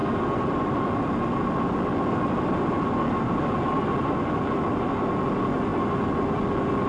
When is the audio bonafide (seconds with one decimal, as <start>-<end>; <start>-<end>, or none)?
0.0-6.9